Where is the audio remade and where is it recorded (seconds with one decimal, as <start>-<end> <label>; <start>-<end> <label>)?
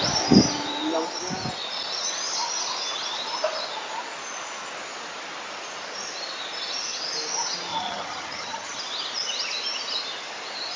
0.0-7.7 recorded; 7.7-8.8 remade; 8.8-10.8 recorded